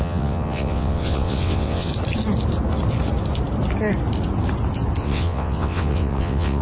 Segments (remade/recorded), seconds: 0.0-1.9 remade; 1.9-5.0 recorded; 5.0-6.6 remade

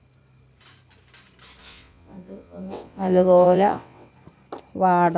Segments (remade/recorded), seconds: 0.0-1.6 recorded; 1.6-4.1 remade; 4.1-5.2 recorded

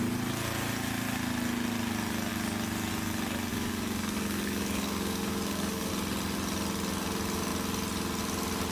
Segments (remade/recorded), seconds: 0.0-3.5 recorded; 3.5-5.9 remade; 5.9-8.7 recorded

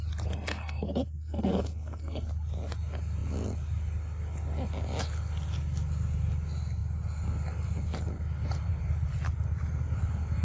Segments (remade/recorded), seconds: 0.0-0.6 recorded; 0.6-2.3 remade; 2.3-10.4 recorded

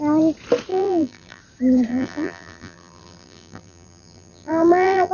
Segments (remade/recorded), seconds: 0.0-0.7 recorded; 0.7-1.4 remade; 1.4-1.9 recorded; 1.9-5.1 remade